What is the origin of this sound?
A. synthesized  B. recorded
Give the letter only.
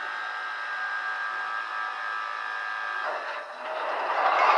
B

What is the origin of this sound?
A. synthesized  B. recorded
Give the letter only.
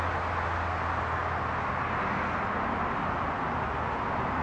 B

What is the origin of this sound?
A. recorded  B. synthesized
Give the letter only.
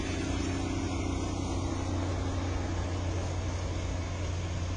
A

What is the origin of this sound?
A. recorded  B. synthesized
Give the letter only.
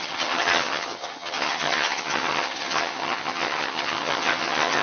B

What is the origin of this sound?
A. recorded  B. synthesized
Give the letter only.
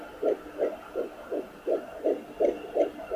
A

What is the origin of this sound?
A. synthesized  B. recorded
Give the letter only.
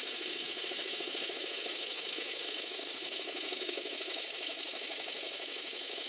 A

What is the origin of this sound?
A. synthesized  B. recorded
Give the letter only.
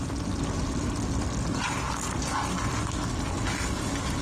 B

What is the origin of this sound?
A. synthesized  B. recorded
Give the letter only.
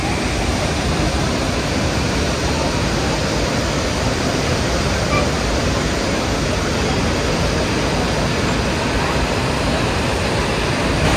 B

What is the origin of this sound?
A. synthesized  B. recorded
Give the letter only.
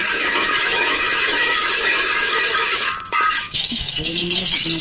A